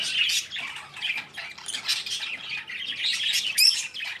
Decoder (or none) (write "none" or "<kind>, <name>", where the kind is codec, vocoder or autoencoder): none